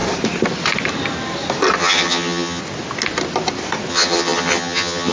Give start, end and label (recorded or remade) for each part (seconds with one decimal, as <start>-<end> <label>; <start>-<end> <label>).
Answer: 0.0-1.8 recorded; 1.8-2.6 remade; 2.6-3.9 recorded; 3.9-5.1 remade

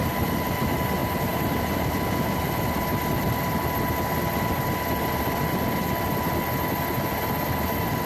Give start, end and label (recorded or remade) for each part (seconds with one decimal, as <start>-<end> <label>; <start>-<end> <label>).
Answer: 0.0-1.0 recorded; 1.0-1.9 remade; 1.9-8.1 recorded

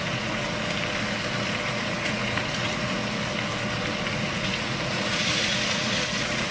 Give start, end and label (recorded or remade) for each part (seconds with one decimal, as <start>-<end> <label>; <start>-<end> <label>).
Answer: 0.0-0.4 remade; 0.4-1.7 recorded; 1.7-3.0 remade; 3.0-4.2 recorded; 4.2-6.5 remade

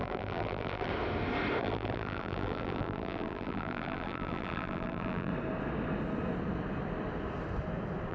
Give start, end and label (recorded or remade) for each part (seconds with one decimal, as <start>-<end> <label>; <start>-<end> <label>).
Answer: 0.0-0.9 remade; 0.9-1.6 recorded; 1.6-5.3 remade; 5.3-8.1 recorded

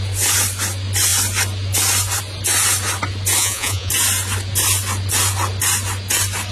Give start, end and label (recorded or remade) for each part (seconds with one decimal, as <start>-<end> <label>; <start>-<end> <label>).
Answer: 0.0-3.4 recorded; 3.4-3.9 remade; 3.9-6.5 recorded

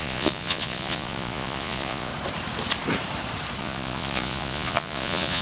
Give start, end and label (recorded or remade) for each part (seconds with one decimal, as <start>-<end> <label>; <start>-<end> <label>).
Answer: 0.0-2.1 remade; 2.1-3.6 recorded; 3.6-5.4 remade

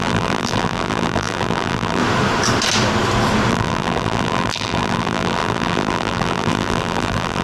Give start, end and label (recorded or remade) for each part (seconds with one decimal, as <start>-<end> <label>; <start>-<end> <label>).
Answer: 0.0-2.0 remade; 2.0-3.5 recorded; 3.5-7.4 remade

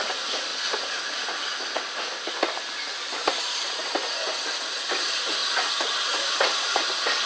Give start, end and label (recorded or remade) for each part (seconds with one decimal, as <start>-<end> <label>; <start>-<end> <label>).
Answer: 0.0-0.5 remade; 0.5-2.9 recorded; 2.9-3.8 remade; 3.8-4.6 recorded; 4.6-5.4 remade; 5.4-6.3 recorded; 6.3-7.3 remade